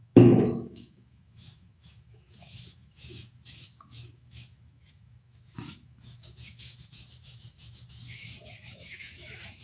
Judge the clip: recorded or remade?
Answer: remade